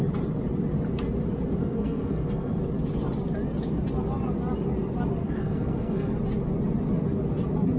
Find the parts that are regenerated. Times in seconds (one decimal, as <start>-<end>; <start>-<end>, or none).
1.6-2.6; 5.2-6.1